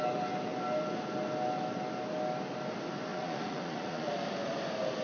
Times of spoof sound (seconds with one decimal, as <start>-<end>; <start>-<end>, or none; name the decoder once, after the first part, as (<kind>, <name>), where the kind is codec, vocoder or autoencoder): 3.1-4.1 (vocoder, Vocos)